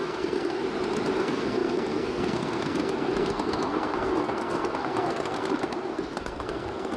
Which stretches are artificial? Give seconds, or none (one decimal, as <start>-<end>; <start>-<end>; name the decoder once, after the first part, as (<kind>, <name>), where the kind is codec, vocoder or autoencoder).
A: 0.0-0.6 (codec, SNAC); 1.2-7.0